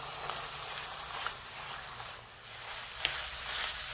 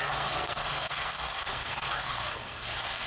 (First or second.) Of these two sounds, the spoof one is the second